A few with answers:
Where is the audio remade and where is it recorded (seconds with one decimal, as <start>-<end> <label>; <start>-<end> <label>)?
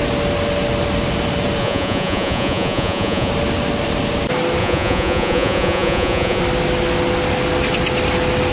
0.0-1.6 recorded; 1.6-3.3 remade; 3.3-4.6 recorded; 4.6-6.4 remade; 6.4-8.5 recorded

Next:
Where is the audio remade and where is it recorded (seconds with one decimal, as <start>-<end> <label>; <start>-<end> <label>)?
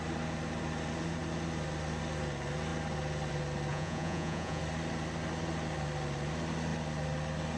0.0-3.7 recorded; 3.7-4.6 remade; 4.6-7.6 recorded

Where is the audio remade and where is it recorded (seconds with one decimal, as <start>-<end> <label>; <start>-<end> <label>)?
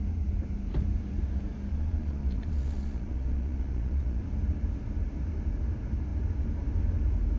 0.0-1.7 recorded; 1.7-4.2 remade; 4.2-7.4 recorded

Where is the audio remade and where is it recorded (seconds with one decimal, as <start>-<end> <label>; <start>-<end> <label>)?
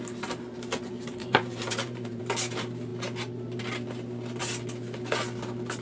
0.0-1.2 recorded; 1.2-2.2 remade; 2.2-5.8 recorded